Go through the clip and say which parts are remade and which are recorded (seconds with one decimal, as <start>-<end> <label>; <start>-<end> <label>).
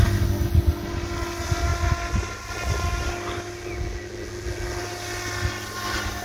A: 0.0-6.2 recorded